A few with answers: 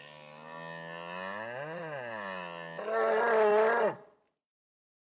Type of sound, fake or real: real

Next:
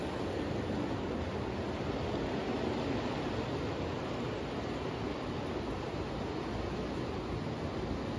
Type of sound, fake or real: real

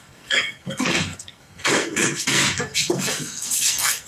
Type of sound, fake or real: fake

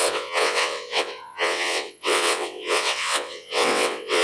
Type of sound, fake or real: fake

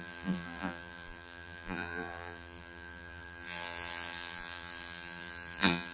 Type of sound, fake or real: fake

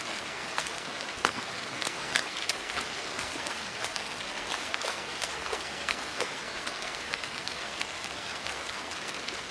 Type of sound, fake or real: fake